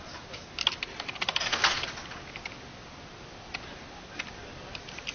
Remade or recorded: recorded